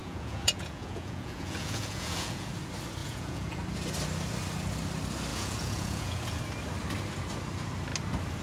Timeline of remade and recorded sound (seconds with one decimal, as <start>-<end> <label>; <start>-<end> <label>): 0.0-2.5 remade; 2.5-3.0 recorded; 3.0-3.6 remade; 3.6-5.3 recorded; 5.3-6.4 remade; 6.4-8.4 recorded